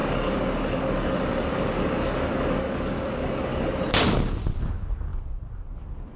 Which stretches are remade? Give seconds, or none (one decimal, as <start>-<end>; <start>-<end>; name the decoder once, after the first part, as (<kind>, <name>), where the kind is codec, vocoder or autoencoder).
0.0-3.7 (codec, DAC)